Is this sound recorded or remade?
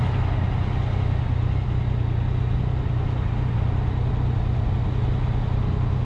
recorded